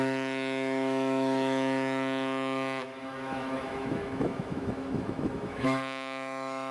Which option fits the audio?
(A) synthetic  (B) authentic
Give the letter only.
A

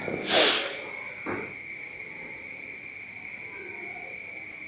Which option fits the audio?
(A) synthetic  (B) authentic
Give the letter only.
B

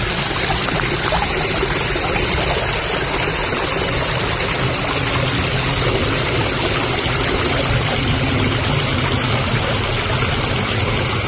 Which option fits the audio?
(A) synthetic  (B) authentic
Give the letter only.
B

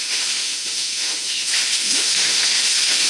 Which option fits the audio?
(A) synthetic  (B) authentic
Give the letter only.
A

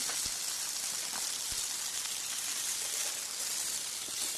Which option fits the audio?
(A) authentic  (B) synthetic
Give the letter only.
A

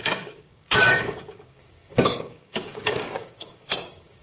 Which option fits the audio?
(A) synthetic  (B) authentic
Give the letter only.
A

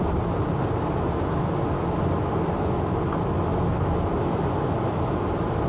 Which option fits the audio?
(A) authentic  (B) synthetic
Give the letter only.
A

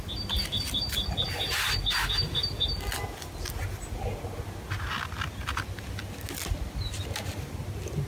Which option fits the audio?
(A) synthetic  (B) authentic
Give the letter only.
B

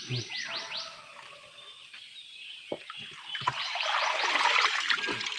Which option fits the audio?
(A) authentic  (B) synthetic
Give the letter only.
A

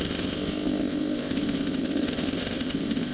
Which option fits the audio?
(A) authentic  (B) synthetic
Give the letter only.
B